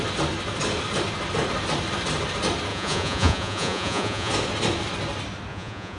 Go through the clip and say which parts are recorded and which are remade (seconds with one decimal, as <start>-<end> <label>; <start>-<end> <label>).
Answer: 0.0-2.7 recorded; 2.7-4.3 remade; 4.3-5.5 recorded; 5.5-6.0 remade